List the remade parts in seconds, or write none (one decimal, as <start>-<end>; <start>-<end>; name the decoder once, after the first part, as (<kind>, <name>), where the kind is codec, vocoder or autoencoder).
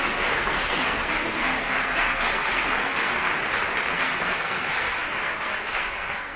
0.0-3.3 (codec, SNAC); 3.8-6.4